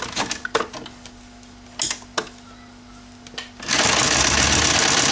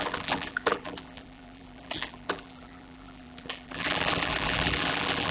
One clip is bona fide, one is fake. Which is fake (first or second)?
second